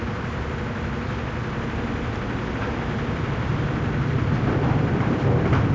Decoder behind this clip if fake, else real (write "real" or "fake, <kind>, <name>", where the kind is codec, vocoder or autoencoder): real